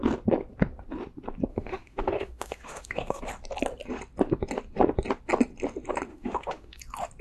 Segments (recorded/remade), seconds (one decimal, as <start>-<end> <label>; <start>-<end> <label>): 0.0-1.5 recorded; 1.5-3.2 remade; 3.2-6.1 recorded; 6.1-6.8 remade; 6.8-7.2 recorded